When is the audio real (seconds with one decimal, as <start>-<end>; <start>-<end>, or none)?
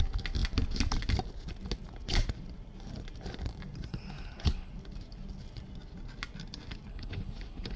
0.0-3.9; 4.7-6.9